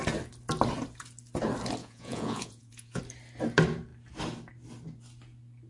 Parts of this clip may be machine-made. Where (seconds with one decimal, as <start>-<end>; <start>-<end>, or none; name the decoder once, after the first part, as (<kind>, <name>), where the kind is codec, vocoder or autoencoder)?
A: 1.8-3.0 (vocoder, Vocos)